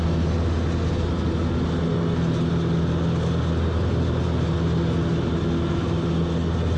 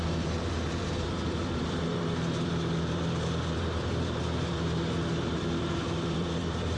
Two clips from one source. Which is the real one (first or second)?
first